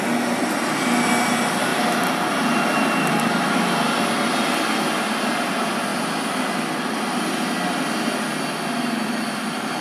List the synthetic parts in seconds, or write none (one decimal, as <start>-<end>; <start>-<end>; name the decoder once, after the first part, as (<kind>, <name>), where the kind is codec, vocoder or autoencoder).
1.7-3.1 (vocoder, BigVGAN v2)